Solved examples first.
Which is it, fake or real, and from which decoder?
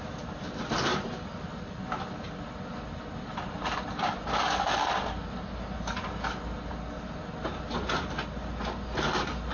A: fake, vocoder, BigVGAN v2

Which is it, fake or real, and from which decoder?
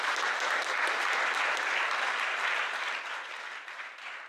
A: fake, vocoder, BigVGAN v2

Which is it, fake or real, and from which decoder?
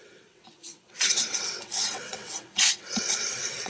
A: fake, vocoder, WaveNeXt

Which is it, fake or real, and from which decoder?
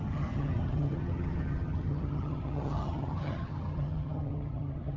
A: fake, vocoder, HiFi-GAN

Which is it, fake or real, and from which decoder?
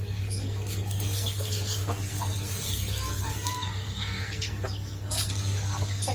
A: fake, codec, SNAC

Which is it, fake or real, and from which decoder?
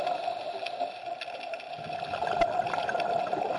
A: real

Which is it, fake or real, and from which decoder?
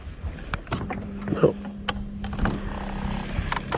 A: real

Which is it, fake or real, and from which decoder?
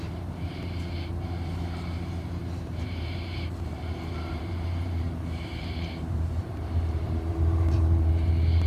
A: fake, vocoder, BigVGAN v2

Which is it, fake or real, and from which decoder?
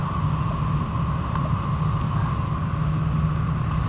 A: real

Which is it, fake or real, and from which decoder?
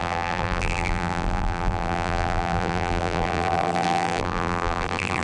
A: fake, vocoder, BigVGAN v2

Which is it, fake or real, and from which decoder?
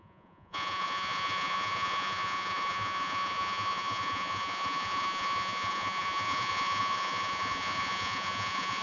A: fake, vocoder, Vocos